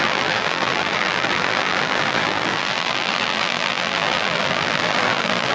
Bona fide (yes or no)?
no